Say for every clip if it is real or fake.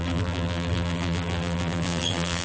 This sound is fake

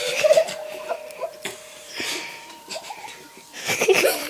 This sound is fake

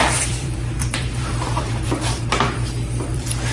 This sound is fake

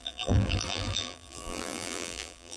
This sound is fake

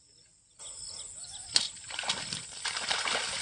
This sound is real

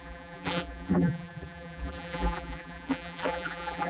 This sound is fake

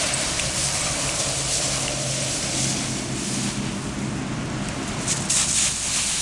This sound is real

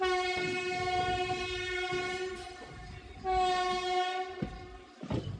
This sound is real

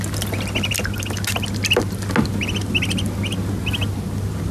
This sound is real